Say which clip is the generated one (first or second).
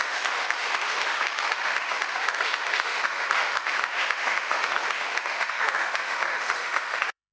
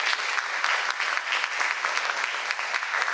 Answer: first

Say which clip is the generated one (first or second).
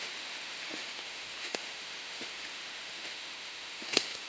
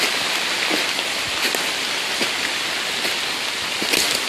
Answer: first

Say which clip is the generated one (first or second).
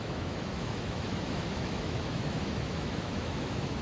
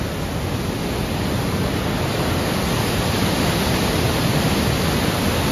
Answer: first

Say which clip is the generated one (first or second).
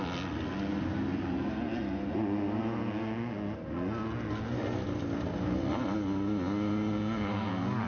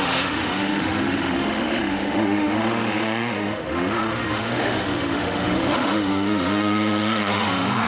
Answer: second